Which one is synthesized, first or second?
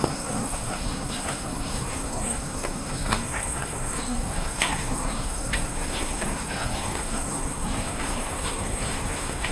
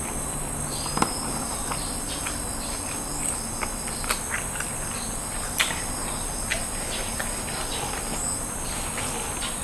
first